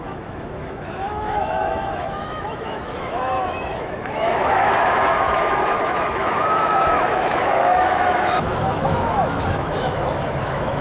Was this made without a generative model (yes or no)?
no